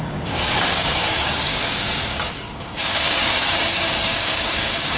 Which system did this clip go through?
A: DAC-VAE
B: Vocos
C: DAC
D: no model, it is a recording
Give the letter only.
C